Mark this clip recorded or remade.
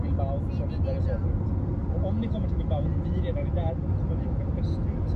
recorded